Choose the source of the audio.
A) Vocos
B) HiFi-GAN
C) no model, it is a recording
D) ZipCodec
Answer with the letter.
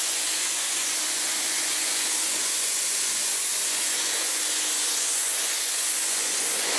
A